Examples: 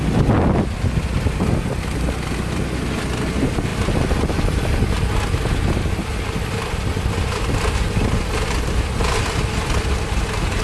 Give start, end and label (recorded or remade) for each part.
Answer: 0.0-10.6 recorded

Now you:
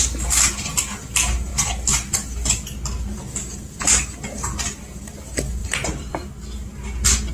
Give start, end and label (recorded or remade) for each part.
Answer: 0.0-5.6 recorded; 5.6-6.1 remade; 6.1-7.3 recorded

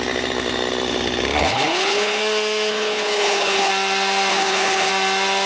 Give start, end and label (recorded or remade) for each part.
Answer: 0.0-1.4 recorded; 1.4-2.2 remade; 2.2-2.7 recorded; 2.7-3.7 remade; 3.7-4.3 recorded; 4.3-4.9 remade; 4.9-5.5 recorded